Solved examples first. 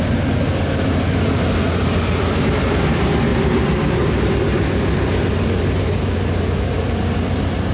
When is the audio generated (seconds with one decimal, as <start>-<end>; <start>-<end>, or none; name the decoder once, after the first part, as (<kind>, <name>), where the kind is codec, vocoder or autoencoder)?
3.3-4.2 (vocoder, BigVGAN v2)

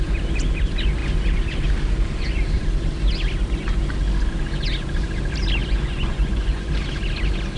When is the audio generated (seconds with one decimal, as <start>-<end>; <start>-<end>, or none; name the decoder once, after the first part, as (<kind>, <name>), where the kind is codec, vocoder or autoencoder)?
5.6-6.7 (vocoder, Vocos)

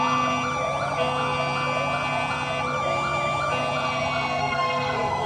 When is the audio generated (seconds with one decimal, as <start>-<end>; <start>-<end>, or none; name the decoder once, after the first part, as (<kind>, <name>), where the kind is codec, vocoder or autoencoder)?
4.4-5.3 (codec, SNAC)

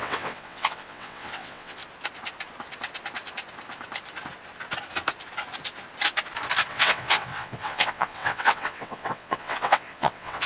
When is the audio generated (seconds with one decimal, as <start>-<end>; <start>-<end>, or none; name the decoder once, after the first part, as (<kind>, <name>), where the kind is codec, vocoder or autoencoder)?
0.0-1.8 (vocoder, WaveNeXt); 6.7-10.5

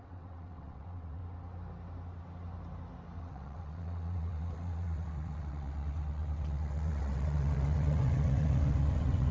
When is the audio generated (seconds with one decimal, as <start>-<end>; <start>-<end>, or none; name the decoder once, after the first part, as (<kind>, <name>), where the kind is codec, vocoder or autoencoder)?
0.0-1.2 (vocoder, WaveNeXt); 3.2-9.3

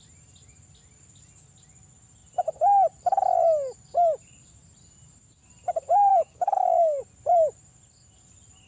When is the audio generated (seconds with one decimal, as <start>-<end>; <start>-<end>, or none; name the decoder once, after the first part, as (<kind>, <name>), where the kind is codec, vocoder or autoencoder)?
6.1-7.0 (codec, DAC)

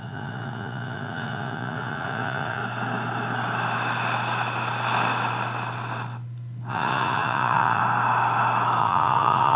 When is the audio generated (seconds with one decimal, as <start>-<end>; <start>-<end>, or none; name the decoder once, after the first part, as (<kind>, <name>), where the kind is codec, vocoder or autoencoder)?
0.0-2.6 (vocoder, Vocos); 6.7-7.8; 8.8-9.6